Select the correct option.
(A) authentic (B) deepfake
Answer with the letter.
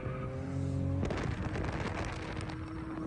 A